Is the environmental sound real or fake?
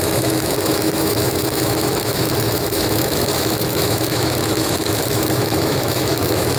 fake